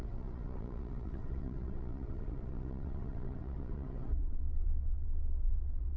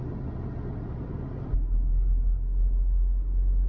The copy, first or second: first